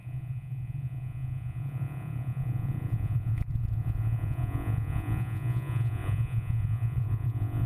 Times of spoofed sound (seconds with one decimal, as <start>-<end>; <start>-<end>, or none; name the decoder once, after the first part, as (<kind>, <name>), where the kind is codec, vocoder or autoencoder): 0.0-7.7 (vocoder, Vocos)

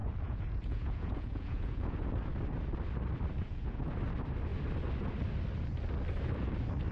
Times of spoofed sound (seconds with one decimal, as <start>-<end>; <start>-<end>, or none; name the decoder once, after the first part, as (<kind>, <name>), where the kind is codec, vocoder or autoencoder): 0.0-2.1 (vocoder, Vocos); 3.4-3.9

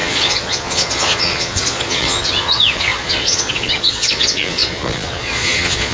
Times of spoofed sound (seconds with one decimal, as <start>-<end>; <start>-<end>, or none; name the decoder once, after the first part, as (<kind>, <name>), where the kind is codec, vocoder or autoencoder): 0.0-5.9 (vocoder, Vocos)

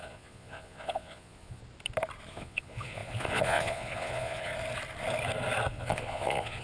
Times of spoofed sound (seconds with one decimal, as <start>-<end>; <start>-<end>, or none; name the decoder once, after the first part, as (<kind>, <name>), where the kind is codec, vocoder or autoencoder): 0.0-1.6 (vocoder, Vocos); 2.3-4.5; 5.7-6.6

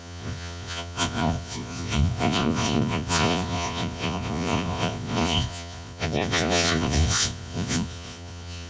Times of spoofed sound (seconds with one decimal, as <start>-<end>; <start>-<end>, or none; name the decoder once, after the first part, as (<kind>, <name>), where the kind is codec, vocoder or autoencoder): 0.0-8.7 (vocoder, Vocos)

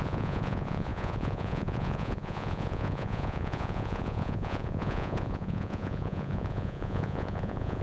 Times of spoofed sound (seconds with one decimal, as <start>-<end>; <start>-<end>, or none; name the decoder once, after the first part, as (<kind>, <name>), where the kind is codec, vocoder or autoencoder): 0.0-7.8 (vocoder, Vocos)

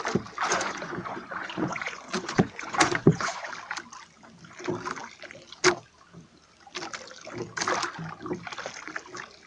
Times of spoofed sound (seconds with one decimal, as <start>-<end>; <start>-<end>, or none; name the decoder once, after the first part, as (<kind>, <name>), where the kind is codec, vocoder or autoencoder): 0.5-3.5 (vocoder, Vocos)